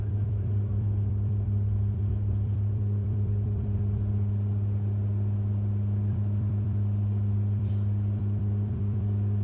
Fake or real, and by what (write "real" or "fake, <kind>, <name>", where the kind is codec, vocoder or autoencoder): fake, vocoder, BigVGAN v2